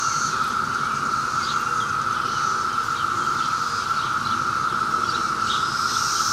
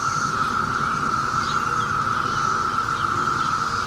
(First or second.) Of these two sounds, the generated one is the second